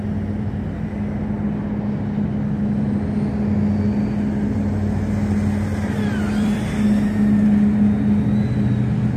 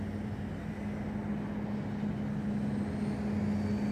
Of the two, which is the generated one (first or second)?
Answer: first